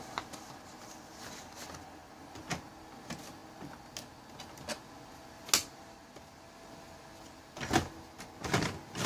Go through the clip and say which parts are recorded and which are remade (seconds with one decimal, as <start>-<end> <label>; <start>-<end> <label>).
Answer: 0.0-9.1 recorded